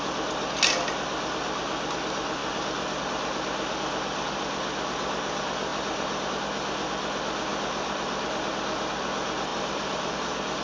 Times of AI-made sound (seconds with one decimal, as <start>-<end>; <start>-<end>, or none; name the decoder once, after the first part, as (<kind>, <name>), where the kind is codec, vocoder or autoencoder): 5.7-6.3 (vocoder, BigVGAN v2); 9.5-10.1